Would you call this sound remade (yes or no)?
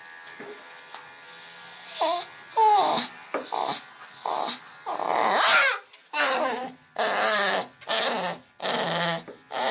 no